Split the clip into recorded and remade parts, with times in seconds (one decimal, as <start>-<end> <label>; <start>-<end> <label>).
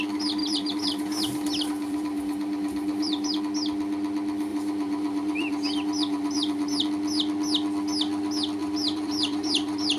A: 0.0-0.4 recorded; 0.4-3.4 remade; 3.4-4.5 recorded; 4.5-6.9 remade; 6.9-8.6 recorded; 8.6-10.0 remade